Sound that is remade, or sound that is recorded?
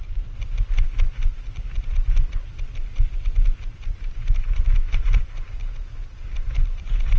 remade